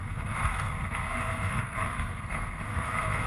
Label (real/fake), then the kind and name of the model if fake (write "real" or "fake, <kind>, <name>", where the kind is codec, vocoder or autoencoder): fake, codec, SNAC